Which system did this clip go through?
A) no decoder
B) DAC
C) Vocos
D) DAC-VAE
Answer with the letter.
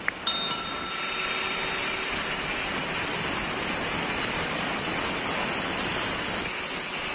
A